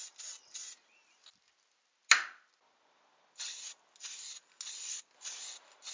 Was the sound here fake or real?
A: real